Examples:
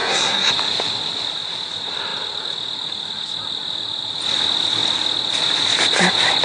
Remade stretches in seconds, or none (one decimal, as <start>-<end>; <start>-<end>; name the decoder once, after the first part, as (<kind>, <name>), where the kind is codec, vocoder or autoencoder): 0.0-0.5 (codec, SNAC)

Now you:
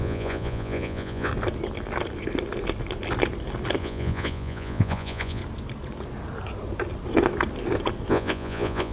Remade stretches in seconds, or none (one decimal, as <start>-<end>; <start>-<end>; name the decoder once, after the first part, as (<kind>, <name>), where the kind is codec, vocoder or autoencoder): 0.0-1.3 (vocoder, Vocos); 3.8-5.4; 8.1-8.9

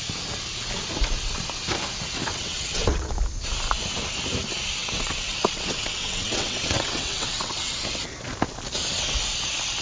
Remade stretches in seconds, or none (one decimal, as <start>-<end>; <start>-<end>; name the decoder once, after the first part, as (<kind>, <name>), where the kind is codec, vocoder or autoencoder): 2.3-3.1 (vocoder, WaveNeXt); 4.8-7.8

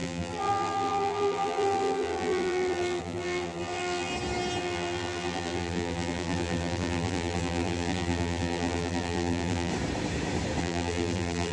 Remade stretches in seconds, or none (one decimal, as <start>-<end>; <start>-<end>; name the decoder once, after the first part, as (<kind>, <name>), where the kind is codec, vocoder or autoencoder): 0.0-4.1 (vocoder, BigVGAN v2); 4.6-9.7; 10.6-11.5

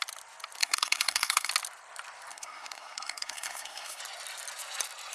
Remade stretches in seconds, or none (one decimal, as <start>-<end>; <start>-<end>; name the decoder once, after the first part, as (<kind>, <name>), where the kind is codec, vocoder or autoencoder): 0.6-1.5 (codec, SNAC); 2.3-4.0

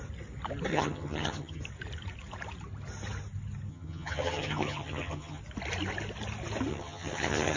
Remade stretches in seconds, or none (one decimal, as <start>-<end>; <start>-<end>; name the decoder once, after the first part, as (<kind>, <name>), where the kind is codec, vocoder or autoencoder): 0.7-1.6 (vocoder, HiFi-GAN); 3.7-5.4; 6.7-7.6